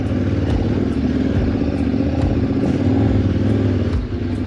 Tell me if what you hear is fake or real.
real